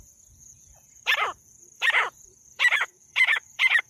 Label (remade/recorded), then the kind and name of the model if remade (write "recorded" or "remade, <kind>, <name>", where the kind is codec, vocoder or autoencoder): remade, vocoder, Vocos